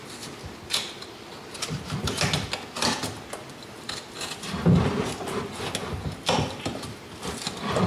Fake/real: real